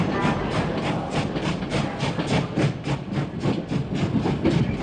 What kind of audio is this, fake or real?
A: real